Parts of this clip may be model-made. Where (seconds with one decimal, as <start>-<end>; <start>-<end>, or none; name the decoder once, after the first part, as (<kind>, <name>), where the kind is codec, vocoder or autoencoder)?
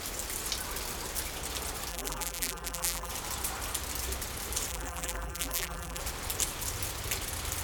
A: 1.9-3.1 (vocoder, BigVGAN v2); 4.7-6.0